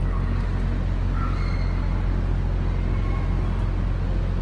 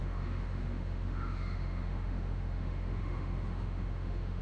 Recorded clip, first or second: first